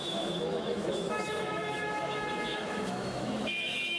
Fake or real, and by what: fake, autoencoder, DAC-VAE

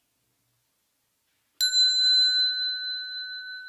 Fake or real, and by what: real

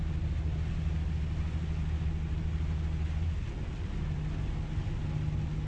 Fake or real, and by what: real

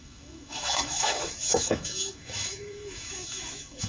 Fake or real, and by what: fake, autoencoder, DAC-VAE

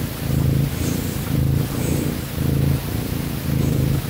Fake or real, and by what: real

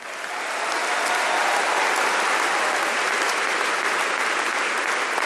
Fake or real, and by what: real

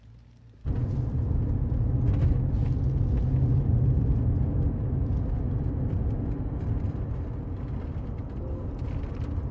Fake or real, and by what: real